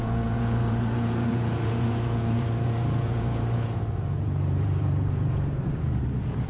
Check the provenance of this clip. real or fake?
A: fake